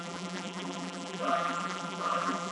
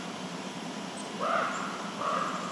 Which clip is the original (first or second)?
second